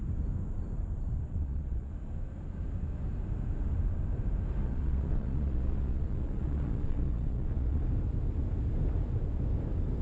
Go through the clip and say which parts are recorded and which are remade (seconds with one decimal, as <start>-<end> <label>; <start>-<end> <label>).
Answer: 0.0-1.3 recorded; 1.3-1.9 remade; 1.9-4.6 recorded; 4.6-7.8 remade; 7.8-10.0 recorded